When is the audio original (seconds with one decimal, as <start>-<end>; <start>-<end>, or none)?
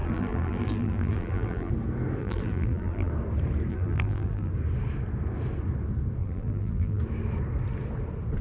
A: 1.7-2.2; 3.1-3.7; 4.5-6.2; 7.0-8.4